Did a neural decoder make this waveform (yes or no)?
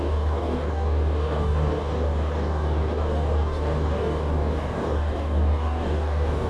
yes